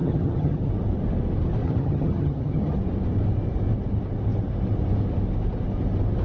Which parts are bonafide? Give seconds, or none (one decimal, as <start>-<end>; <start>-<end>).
0.7-1.6; 2.8-6.2